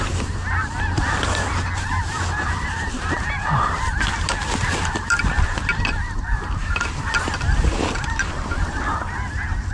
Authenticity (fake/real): real